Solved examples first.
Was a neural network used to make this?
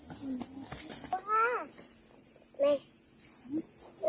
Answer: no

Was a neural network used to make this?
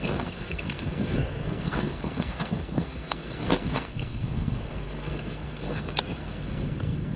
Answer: yes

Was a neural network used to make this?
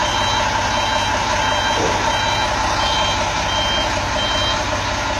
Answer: no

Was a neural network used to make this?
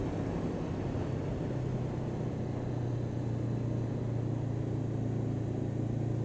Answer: no